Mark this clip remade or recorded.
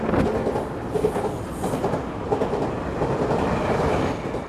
recorded